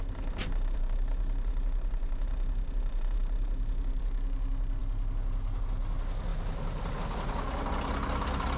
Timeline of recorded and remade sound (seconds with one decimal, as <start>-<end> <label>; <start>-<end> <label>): 0.0-0.4 recorded; 0.4-4.0 remade; 4.0-6.3 recorded; 6.3-7.0 remade; 7.0-8.6 recorded